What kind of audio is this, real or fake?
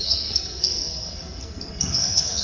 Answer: fake